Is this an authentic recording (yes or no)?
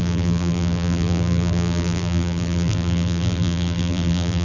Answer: no